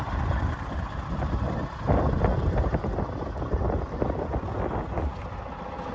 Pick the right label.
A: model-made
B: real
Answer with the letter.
B